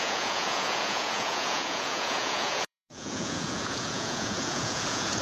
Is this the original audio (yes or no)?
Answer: no